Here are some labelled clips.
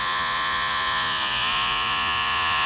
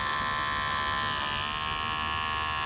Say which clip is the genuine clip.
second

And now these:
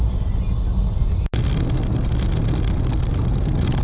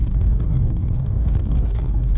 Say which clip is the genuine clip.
first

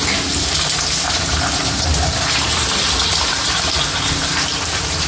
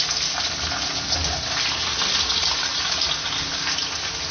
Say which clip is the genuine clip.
second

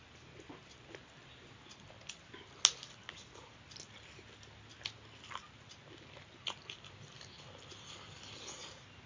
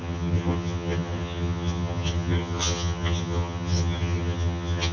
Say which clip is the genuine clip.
first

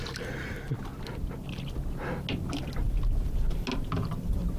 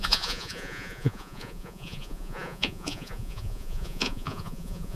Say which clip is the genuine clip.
first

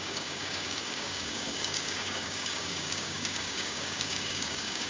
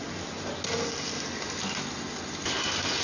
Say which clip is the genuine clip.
second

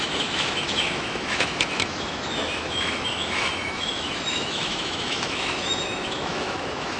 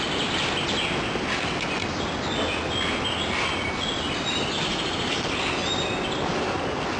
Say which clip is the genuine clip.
second